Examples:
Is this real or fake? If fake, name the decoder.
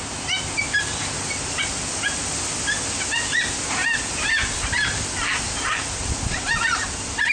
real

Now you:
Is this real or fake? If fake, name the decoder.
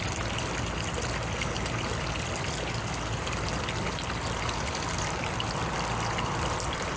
real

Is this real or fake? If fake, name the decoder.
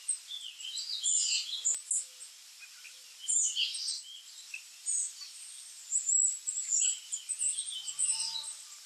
real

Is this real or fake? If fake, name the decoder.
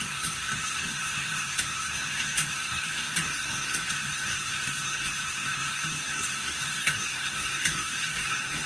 fake, codec, SNAC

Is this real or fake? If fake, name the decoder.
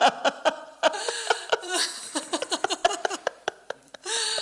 fake, vocoder, BigVGAN v2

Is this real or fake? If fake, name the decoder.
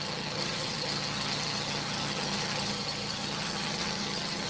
fake, vocoder, HiFi-GAN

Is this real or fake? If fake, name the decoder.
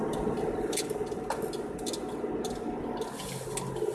real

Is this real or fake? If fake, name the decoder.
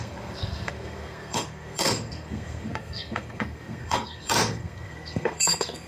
fake, codec, SNAC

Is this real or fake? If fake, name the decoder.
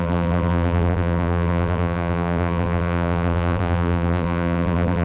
fake, vocoder, BigVGAN v2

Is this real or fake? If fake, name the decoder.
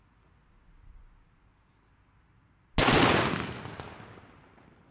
real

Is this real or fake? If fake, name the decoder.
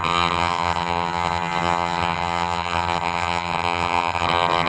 fake, vocoder, HiFi-GAN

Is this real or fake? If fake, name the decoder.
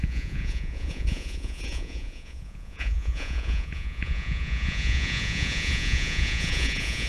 fake, vocoder, Vocos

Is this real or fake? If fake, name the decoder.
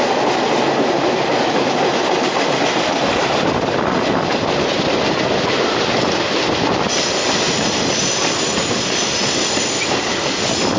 real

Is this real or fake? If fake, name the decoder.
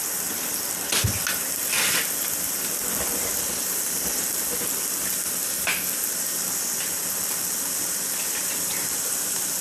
real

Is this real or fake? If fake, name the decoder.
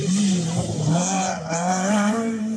fake, vocoder, BigVGAN v2